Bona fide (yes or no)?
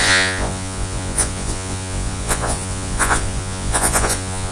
no